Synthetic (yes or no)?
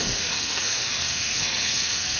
yes